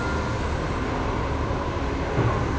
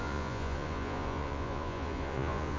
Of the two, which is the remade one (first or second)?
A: second